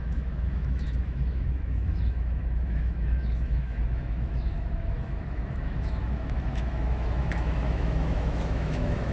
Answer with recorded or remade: remade